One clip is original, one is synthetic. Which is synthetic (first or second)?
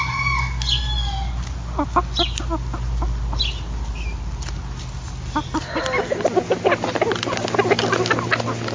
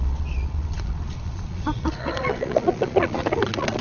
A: second